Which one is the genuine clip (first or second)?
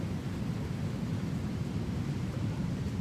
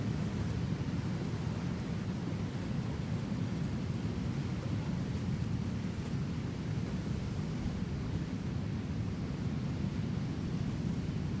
second